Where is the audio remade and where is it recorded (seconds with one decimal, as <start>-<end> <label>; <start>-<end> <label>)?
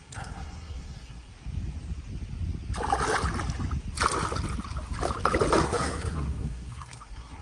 0.0-1.3 remade; 1.3-5.6 recorded; 5.6-7.4 remade